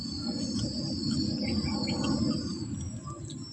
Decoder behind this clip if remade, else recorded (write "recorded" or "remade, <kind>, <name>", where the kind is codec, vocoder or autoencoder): recorded